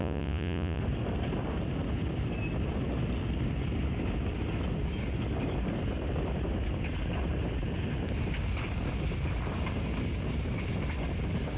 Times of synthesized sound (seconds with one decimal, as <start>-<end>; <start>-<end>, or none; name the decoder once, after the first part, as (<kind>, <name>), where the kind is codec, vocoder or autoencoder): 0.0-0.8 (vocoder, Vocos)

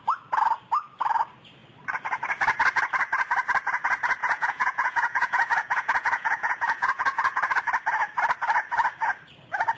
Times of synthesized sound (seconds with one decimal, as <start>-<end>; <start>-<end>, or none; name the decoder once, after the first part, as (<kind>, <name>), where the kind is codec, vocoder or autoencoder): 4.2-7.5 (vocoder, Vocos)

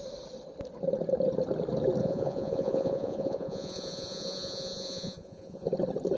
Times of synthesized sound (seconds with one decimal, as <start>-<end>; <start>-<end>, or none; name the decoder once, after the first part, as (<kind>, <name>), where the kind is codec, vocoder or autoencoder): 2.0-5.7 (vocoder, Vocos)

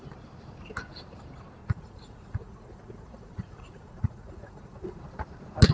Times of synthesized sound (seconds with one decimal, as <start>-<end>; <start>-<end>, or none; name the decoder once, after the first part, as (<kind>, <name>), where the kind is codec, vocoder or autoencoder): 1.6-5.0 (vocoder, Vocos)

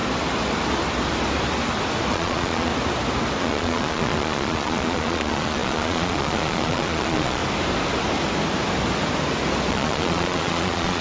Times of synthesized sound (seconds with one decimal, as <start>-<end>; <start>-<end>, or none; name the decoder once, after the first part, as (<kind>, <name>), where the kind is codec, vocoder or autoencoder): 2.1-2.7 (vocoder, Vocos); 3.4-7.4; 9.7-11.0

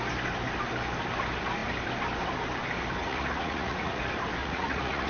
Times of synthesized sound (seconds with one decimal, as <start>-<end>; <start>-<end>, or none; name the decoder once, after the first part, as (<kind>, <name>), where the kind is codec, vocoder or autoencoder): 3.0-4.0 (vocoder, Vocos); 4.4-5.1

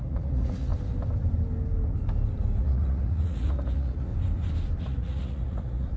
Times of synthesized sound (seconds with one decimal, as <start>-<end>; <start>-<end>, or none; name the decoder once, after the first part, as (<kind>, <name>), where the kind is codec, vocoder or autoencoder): 0.0-0.7 (vocoder, Vocos); 2.6-4.1; 4.8-6.0